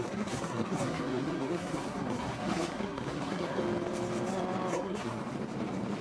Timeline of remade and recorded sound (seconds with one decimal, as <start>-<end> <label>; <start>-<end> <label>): 0.0-3.6 remade; 3.6-4.7 recorded; 4.7-5.2 remade; 5.2-6.0 recorded